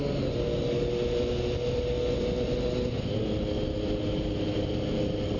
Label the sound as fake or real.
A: real